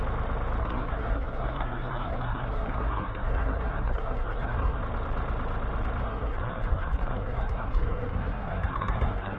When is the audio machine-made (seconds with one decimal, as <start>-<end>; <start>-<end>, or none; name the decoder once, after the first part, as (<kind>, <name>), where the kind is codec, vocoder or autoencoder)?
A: 0.6-4.8 (codec, SNAC); 6.0-9.4